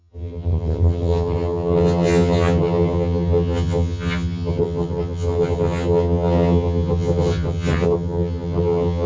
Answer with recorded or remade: remade